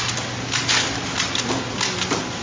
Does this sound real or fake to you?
real